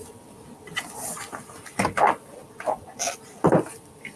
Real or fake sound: real